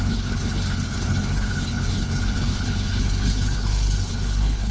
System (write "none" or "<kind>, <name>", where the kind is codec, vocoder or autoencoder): codec, HILCodec